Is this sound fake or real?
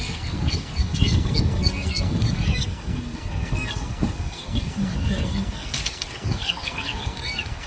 fake